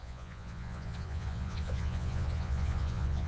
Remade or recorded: remade